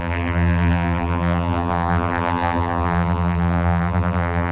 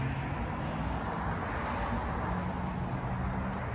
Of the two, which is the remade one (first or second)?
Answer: first